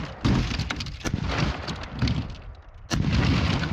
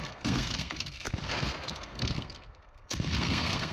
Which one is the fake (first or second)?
second